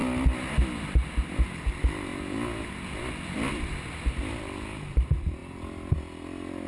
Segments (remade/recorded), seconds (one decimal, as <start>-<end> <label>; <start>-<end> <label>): 0.0-6.7 recorded